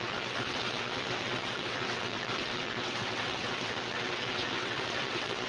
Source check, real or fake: fake